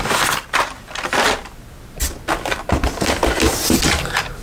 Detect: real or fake real